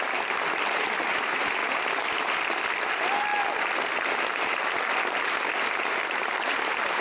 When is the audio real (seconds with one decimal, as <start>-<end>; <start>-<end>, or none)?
1.6-2.2; 3.3-5.9